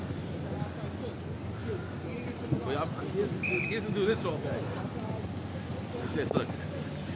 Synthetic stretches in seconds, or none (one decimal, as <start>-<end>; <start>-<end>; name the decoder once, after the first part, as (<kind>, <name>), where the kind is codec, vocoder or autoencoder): none